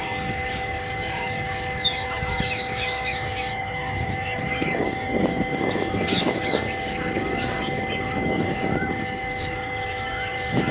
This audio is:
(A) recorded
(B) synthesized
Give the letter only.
B